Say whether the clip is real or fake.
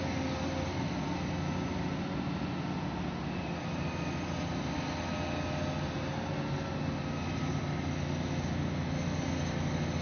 real